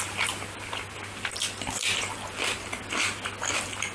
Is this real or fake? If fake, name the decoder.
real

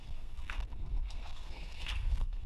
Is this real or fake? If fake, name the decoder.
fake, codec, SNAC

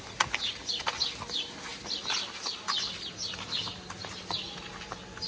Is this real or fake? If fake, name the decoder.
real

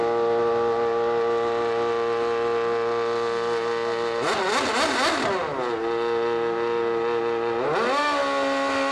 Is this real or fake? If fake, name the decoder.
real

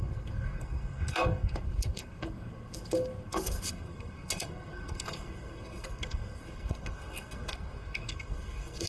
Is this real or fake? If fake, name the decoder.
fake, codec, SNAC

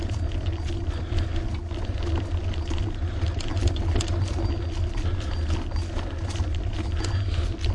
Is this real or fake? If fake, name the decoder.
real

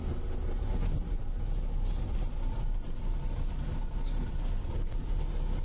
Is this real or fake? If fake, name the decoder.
real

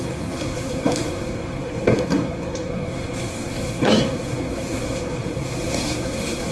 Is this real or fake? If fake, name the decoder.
fake, codec, SNAC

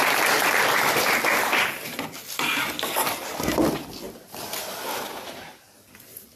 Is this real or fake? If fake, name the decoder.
real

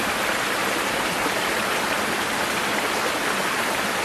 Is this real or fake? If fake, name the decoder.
real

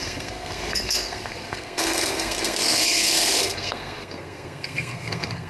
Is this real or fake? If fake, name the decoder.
fake, codec, SNAC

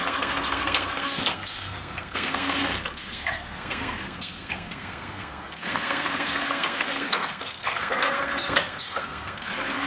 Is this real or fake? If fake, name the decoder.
fake, codec, SNAC